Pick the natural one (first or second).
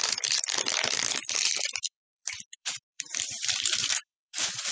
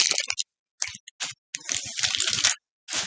second